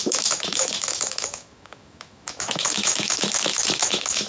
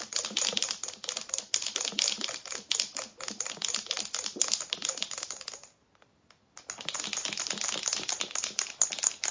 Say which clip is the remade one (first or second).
first